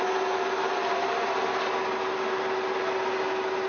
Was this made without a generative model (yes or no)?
yes